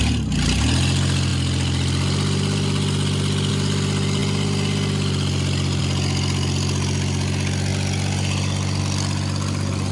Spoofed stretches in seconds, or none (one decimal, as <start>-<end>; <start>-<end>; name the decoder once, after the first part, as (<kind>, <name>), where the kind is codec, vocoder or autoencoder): none